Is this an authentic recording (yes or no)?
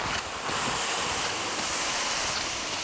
yes